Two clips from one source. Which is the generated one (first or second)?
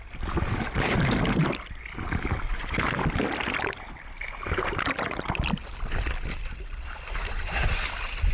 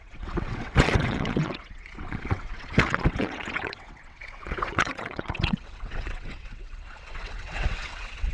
second